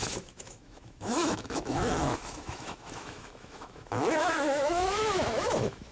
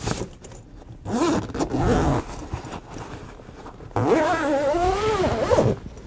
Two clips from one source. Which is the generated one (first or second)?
first